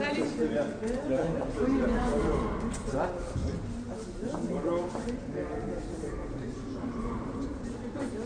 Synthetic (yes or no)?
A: no